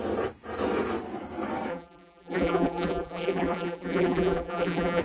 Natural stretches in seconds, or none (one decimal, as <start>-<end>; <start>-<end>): 0.0-1.7

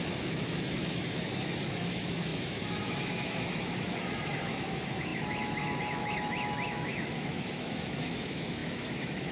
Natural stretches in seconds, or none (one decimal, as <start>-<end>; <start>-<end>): none